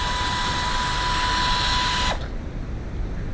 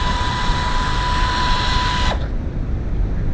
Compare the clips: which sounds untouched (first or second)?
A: first